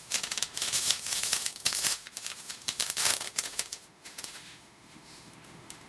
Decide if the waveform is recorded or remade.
remade